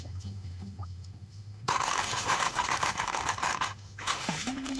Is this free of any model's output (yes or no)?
no